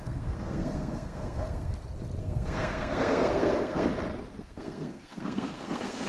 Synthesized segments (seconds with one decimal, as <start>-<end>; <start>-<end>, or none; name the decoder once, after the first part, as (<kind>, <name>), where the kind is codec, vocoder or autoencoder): 0.0-1.7 (codec, SNAC); 2.2-3.9; 4.4-6.1